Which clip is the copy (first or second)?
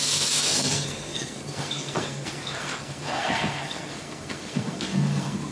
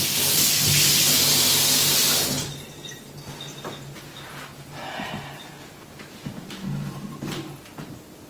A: first